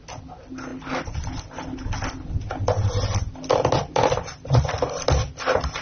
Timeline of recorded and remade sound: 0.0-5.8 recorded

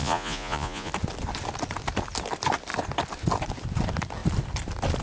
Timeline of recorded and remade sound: 0.0-0.9 remade; 0.9-5.0 recorded

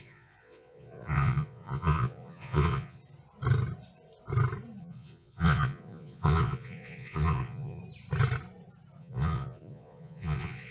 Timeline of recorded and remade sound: 0.0-3.0 remade; 3.0-4.8 recorded; 4.8-7.8 remade; 7.8-9.0 recorded; 9.0-10.7 remade

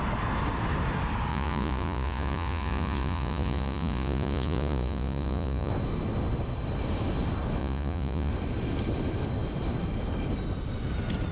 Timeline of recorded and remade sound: 0.0-1.3 recorded; 1.3-5.7 remade; 5.7-7.6 recorded; 7.6-8.3 remade; 8.3-11.3 recorded

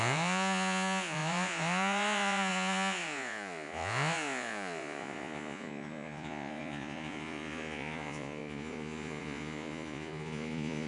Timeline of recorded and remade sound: 0.0-10.9 remade

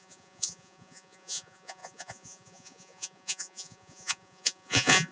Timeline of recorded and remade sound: 0.0-5.1 remade

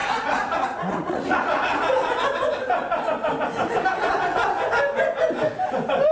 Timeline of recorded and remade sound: 0.0-2.2 remade; 2.2-6.1 recorded

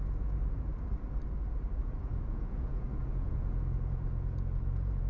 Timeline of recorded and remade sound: 0.0-0.7 remade; 0.7-1.8 recorded; 1.8-5.1 remade